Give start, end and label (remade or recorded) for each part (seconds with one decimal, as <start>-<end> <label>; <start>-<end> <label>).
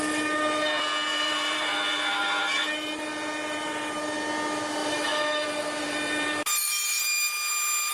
0.0-1.1 recorded; 1.1-3.7 remade; 3.7-4.8 recorded; 4.8-7.5 remade; 7.5-7.9 recorded